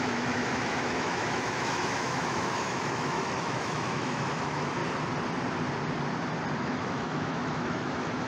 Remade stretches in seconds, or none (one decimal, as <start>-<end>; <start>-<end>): 0.0-4.8; 6.6-8.3